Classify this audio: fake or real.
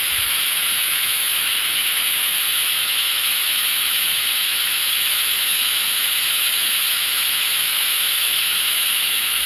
fake